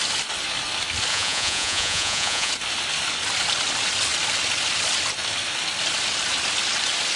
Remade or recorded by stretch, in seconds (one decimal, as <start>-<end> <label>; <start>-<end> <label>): 0.0-1.1 recorded; 1.1-2.5 remade; 2.5-7.2 recorded